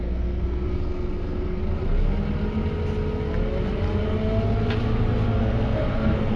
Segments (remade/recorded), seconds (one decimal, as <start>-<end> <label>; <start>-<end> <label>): 0.0-1.6 remade; 1.6-5.4 recorded; 5.4-6.4 remade